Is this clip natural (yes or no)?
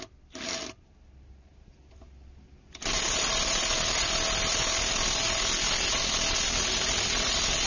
yes